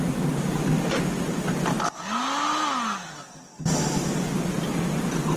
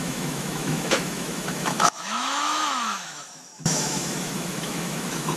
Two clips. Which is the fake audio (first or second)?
second